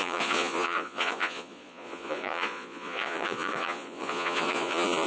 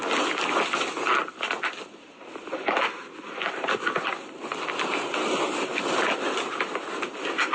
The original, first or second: second